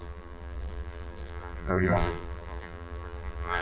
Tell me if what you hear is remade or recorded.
remade